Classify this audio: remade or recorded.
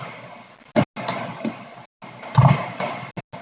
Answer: recorded